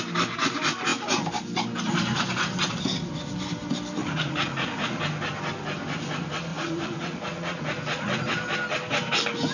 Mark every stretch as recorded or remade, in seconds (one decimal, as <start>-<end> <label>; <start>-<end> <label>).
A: 0.0-4.0 recorded; 4.0-5.0 remade; 5.0-6.5 recorded; 6.5-8.2 remade; 8.2-9.5 recorded